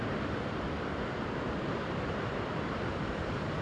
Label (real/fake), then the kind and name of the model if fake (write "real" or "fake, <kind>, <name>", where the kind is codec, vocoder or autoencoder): fake, vocoder, BigVGAN v2